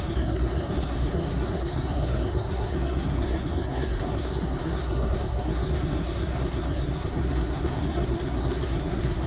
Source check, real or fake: fake